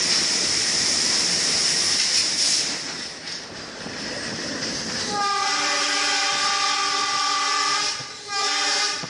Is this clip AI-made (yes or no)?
yes